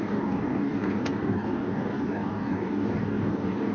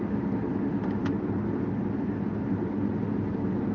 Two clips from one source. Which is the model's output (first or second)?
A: first